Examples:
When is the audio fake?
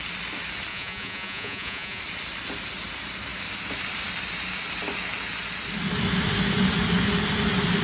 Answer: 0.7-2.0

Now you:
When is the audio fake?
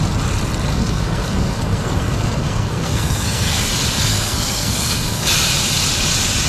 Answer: 0.7-3.6; 4.1-5.2